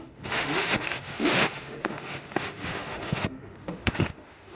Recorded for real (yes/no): no